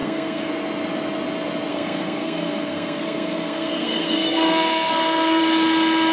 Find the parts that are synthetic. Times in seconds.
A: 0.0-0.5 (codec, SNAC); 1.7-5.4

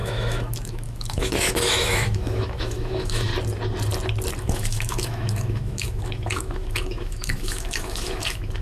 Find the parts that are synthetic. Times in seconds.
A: 0.0-3.3 (autoencoder, DAC-VAE); 4.4-8.6

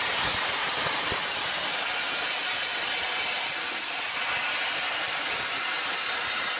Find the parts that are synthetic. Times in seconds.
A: none

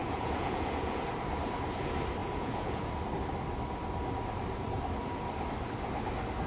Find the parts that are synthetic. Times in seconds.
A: 0.0-1.0 (vocoder, Vocos); 2.2-2.9

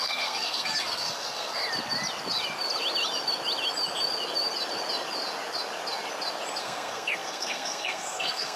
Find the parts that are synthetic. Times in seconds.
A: 0.0-1.6 (codec, SNAC); 6.6-8.6

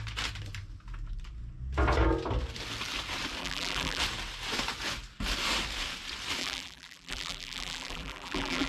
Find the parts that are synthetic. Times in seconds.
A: 3.4-4.0 (vocoder, BigVGAN v2); 6.4-8.7

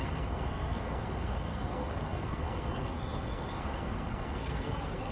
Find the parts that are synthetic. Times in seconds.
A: 0.0-5.1 (codec, SNAC)